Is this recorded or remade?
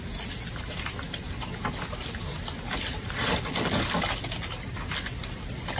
recorded